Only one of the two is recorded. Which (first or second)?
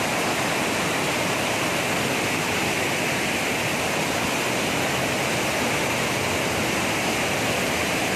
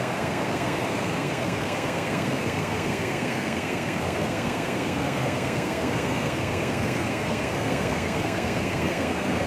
first